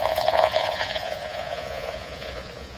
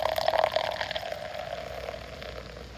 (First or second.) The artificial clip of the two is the first